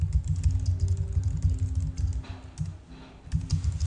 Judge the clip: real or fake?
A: real